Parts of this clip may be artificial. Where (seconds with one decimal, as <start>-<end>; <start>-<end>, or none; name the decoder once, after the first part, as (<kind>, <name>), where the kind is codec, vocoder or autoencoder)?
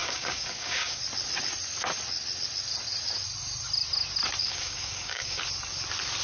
0.0-1.0 (codec, DAC); 4.4-5.4